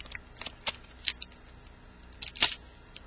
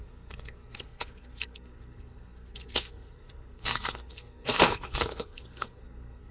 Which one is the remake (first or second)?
second